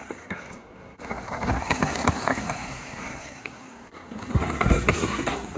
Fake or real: fake